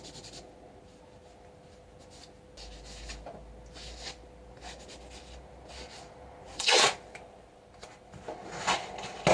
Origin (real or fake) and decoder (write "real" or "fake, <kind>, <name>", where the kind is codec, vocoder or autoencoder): real